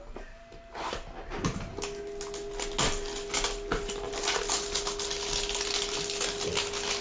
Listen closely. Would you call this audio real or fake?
real